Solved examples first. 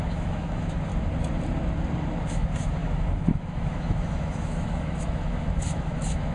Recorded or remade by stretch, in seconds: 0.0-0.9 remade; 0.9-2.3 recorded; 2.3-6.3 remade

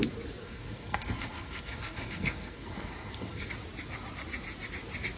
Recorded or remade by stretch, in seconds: 0.0-0.4 recorded; 0.4-3.5 remade; 3.5-5.2 recorded